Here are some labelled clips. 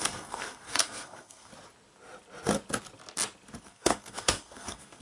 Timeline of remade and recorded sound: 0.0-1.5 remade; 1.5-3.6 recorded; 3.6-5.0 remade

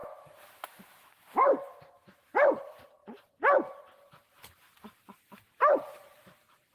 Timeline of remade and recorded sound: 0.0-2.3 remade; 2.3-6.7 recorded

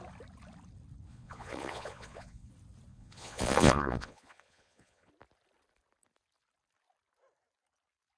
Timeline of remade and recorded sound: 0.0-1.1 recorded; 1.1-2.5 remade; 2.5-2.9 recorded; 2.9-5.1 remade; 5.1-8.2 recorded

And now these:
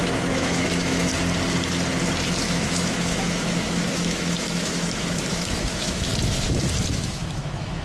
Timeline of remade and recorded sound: 0.0-1.1 remade; 1.1-2.4 recorded; 2.4-6.1 remade; 6.1-6.9 recorded; 6.9-7.8 remade